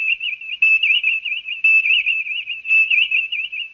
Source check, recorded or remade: recorded